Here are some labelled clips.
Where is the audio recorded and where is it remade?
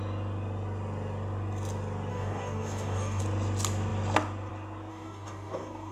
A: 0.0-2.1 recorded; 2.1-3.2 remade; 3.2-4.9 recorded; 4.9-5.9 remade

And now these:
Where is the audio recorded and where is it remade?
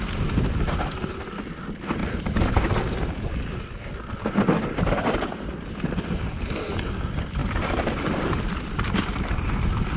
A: 0.0-2.0 recorded; 2.0-5.3 remade; 5.3-7.4 recorded; 7.4-9.2 remade; 9.2-10.0 recorded